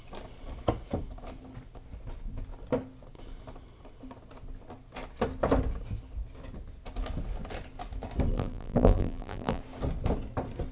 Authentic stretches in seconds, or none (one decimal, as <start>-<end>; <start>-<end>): 0.0-8.3; 9.6-10.7